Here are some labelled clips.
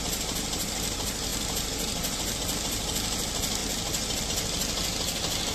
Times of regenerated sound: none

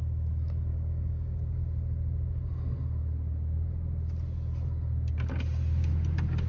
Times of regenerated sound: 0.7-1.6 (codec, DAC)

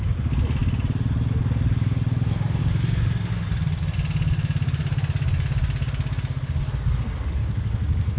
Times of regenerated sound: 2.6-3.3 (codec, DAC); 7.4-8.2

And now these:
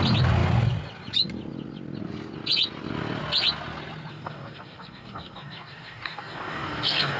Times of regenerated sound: 4.1-7.2 (codec, DAC)